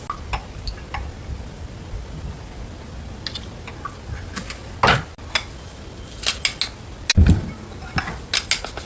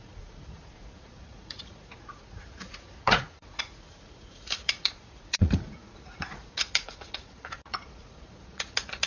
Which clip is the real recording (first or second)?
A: first